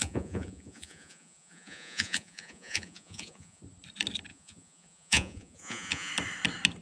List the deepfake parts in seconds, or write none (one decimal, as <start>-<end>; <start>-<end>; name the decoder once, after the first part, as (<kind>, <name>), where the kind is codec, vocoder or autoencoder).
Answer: 0.0-3.6 (vocoder, Vocos); 4.3-6.1